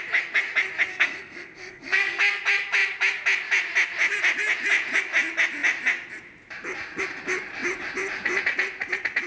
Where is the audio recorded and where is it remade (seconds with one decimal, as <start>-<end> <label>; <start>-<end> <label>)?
0.0-0.9 recorded; 0.9-2.2 remade; 2.2-9.3 recorded